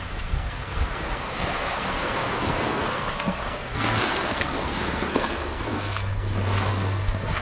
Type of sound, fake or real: fake